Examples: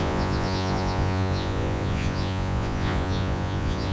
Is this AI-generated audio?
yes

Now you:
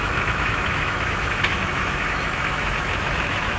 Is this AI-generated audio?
yes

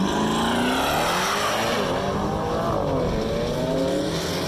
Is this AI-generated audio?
no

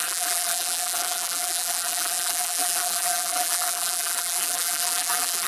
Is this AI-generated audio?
yes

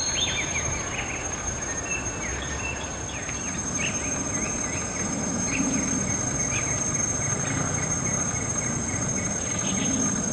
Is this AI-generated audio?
no